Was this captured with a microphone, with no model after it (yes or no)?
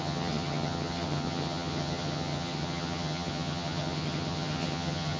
no